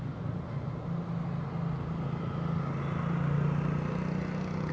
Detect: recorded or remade recorded